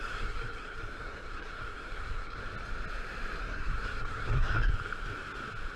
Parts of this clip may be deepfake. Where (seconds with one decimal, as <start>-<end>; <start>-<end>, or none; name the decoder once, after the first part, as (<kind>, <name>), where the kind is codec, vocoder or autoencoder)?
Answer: 0.0-2.4 (codec, SNAC); 3.4-4.7